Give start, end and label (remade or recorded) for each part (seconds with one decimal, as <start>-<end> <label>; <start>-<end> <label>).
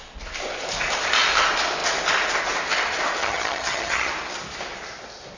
0.0-3.2 recorded; 3.2-4.1 remade; 4.1-5.4 recorded